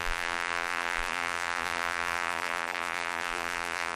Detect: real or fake fake